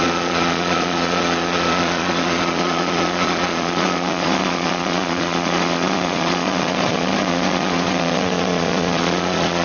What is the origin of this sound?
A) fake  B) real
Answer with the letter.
A